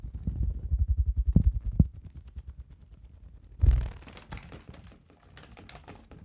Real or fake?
real